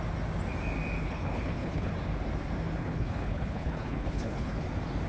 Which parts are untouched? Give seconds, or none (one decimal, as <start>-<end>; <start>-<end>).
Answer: 0.0-1.0; 1.9-2.8; 4.6-5.1